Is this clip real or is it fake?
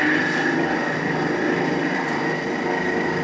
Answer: fake